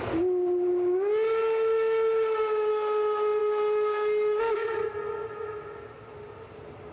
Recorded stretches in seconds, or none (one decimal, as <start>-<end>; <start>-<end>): 0.0-6.9

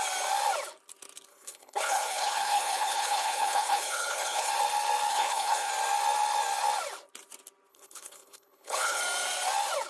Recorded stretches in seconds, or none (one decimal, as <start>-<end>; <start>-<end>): 0.0-1.3; 4.5-5.1; 5.7-7.7; 9.0-9.9